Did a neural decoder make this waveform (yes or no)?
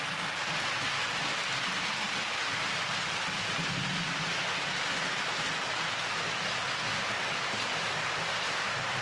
no